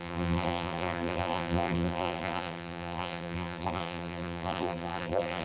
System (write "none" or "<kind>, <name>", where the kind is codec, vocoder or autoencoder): vocoder, BigVGAN v2